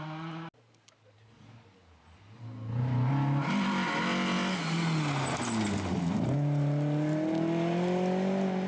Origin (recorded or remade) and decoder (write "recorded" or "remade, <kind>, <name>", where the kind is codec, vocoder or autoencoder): recorded